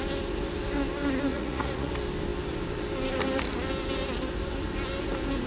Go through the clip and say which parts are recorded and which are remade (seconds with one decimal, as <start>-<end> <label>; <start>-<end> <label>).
0.0-1.3 recorded; 1.3-1.9 remade; 1.9-5.5 recorded